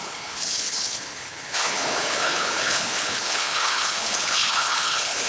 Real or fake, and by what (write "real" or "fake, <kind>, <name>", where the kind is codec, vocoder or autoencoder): fake, codec, HILCodec